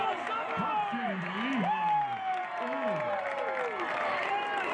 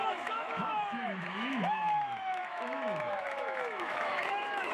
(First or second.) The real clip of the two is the first